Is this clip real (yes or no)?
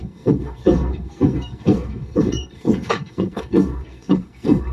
no